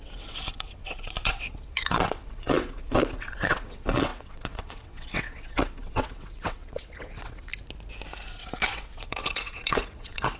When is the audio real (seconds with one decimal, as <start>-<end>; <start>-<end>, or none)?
7.5-8.3